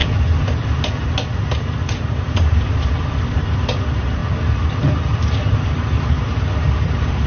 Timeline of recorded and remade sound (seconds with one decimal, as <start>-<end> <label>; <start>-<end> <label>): 0.0-1.3 recorded; 1.3-4.2 remade; 4.2-6.1 recorded; 6.1-7.3 remade